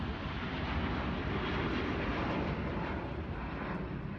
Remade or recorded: recorded